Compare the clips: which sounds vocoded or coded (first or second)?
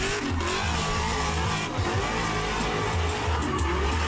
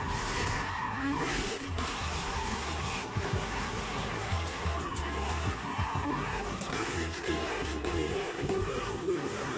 second